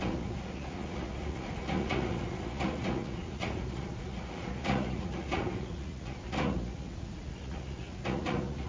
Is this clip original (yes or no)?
no